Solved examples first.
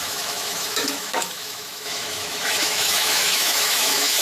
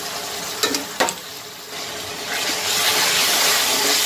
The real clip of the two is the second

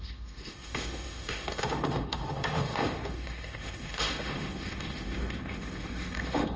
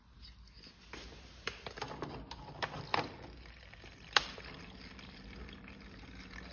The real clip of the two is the second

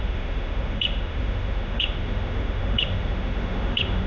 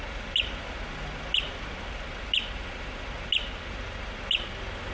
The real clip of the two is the second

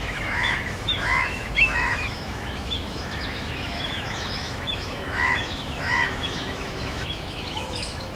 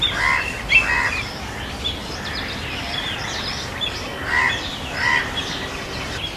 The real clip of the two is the second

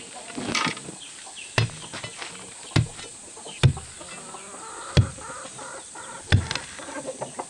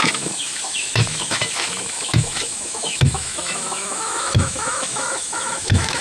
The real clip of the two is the first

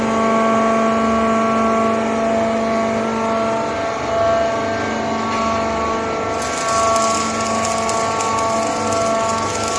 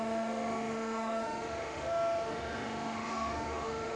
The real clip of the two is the first